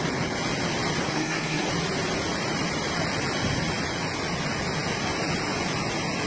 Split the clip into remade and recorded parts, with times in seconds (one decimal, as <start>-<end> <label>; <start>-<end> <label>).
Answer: 0.0-1.0 recorded; 1.0-1.7 remade; 1.7-6.3 recorded